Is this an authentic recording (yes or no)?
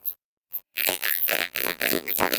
no